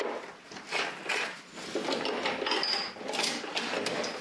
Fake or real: real